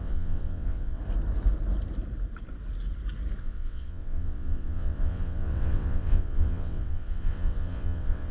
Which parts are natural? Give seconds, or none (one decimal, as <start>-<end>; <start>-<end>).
1.0-3.4